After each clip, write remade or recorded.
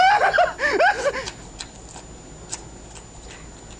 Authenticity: recorded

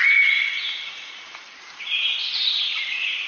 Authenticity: remade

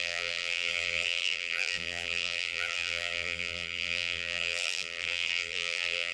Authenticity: remade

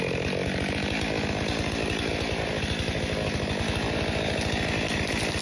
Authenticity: recorded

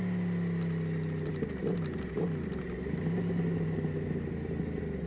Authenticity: recorded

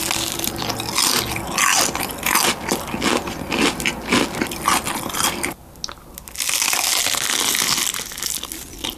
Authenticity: recorded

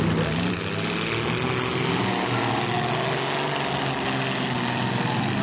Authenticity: recorded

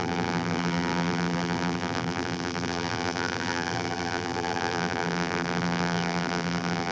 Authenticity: remade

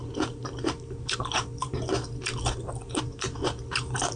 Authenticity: remade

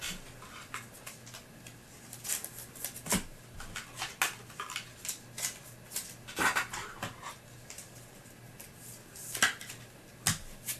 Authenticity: recorded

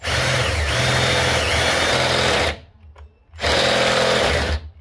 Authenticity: recorded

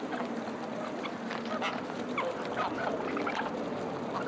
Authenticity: recorded